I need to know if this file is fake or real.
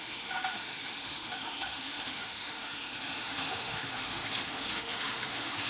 fake